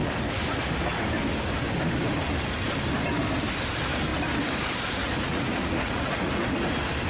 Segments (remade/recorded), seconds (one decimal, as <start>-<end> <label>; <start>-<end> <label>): 0.0-5.0 recorded; 5.0-6.3 remade; 6.3-7.1 recorded